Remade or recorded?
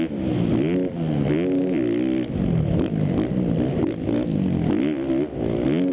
recorded